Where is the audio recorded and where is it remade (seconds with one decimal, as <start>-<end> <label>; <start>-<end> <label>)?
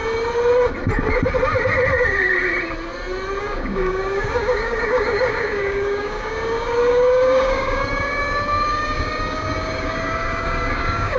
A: 0.0-3.4 recorded; 3.4-11.2 remade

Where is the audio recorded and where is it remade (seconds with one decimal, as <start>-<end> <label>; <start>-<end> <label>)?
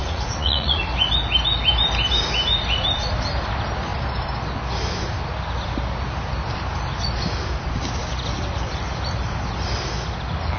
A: 0.0-0.8 remade; 0.8-10.6 recorded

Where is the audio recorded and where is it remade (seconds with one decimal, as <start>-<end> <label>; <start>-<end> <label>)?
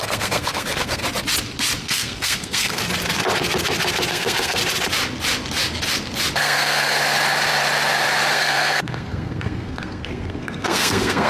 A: 0.0-1.0 remade; 1.0-1.8 recorded; 1.8-2.8 remade; 2.8-4.1 recorded; 4.1-4.6 remade; 4.6-6.4 recorded; 6.4-7.0 remade; 7.0-8.3 recorded; 8.3-11.3 remade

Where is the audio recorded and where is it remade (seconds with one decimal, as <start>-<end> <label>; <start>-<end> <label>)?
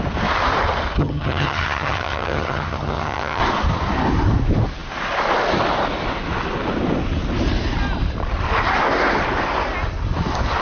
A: 0.0-1.0 recorded; 1.0-3.4 remade; 3.4-10.6 recorded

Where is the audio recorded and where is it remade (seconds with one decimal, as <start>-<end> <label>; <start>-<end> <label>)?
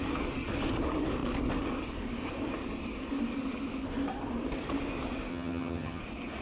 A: 0.0-5.3 recorded; 5.3-6.0 remade; 6.0-6.4 recorded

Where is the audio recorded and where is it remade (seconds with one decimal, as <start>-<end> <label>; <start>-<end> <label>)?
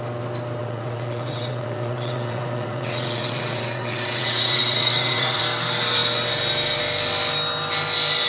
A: 0.0-0.6 recorded; 0.6-5.4 remade; 5.4-8.3 recorded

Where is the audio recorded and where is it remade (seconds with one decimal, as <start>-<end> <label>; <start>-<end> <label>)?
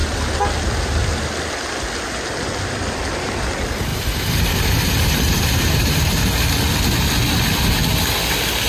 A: 0.0-3.9 recorded; 3.9-6.1 remade; 6.1-8.7 recorded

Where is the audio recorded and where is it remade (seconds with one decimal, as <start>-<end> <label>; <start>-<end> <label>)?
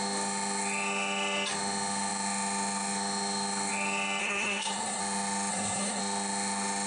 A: 0.0-4.2 recorded; 4.2-5.0 remade; 5.0-5.5 recorded; 5.5-6.0 remade; 6.0-6.9 recorded